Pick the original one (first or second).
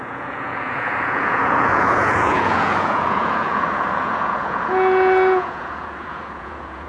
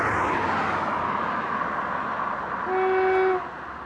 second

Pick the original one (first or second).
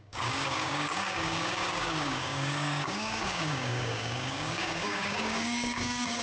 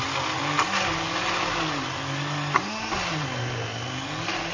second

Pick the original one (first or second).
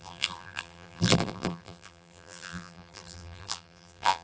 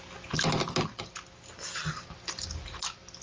second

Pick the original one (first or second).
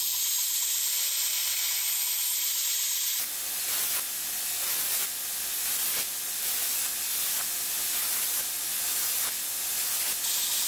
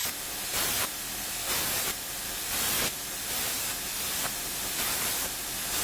first